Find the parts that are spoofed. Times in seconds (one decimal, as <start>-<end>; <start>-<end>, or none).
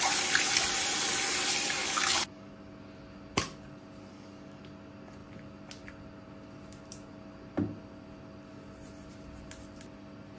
1.8-2.5; 4.1-4.6